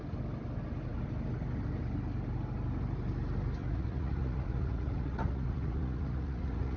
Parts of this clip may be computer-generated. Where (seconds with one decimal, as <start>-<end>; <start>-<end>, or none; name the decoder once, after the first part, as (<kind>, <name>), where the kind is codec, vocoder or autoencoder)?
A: 3.6-6.8 (vocoder, Vocos)